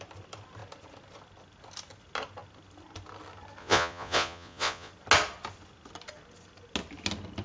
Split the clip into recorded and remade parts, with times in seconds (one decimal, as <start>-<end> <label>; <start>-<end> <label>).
0.0-3.6 recorded; 3.6-4.9 remade; 4.9-7.4 recorded